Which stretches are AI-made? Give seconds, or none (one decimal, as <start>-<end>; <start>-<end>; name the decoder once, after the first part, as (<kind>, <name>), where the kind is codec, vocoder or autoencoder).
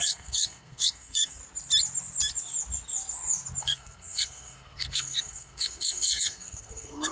0.0-1.4 (codec, SNAC); 3.6-7.1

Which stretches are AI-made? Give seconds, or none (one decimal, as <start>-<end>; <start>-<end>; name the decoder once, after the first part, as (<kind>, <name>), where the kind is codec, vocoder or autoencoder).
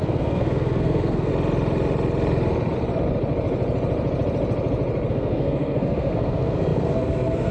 0.0-1.3 (codec, SNAC); 5.1-7.5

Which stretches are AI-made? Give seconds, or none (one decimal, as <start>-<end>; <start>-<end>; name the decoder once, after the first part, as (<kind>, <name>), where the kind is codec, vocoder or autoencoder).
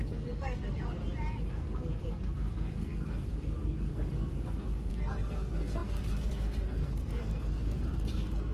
0.0-1.0 (codec, SNAC); 1.5-8.5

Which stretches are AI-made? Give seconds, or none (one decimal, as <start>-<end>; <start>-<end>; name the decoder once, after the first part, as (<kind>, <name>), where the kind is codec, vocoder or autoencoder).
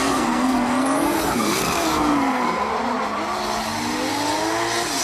0.0-2.7 (codec, SNAC)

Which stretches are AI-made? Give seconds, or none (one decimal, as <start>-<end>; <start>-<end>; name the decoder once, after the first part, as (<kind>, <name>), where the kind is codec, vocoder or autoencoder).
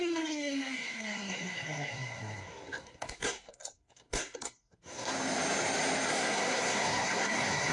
0.0-5.1 (codec, SNAC); 6.1-7.7